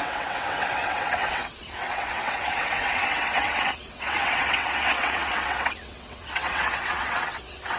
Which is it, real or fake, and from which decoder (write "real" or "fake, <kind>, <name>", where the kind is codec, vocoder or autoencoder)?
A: fake, vocoder, WaveNeXt